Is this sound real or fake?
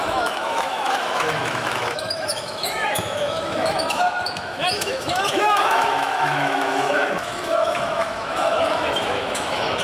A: fake